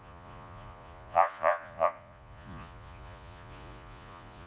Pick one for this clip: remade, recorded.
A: remade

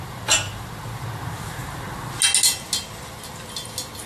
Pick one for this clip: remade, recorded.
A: recorded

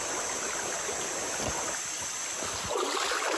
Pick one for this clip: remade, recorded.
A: recorded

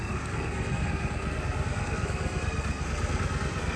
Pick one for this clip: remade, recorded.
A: remade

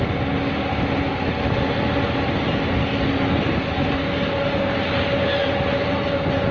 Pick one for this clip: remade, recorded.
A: recorded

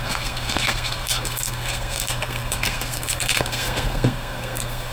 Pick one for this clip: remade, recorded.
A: remade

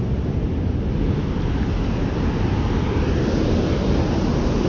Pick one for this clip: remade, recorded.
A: recorded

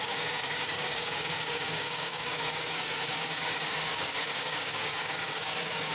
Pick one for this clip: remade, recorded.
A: remade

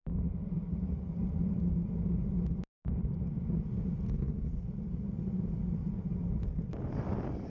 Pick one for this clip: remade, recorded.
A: recorded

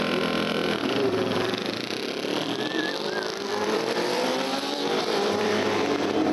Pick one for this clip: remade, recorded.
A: remade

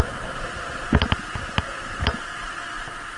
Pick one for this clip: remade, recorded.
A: recorded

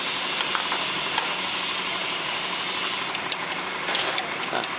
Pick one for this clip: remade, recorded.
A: recorded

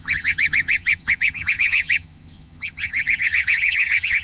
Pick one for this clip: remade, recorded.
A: remade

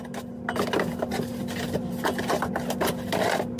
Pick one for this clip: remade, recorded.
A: recorded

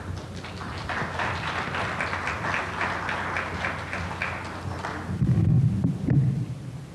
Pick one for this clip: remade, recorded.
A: recorded